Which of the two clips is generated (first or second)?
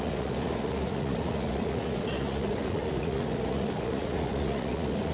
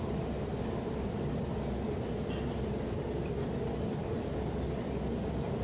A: first